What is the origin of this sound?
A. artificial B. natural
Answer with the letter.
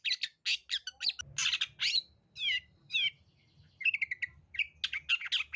B